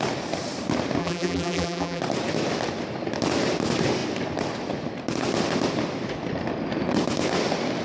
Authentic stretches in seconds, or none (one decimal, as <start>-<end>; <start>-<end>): 0.0-1.0; 2.0-7.8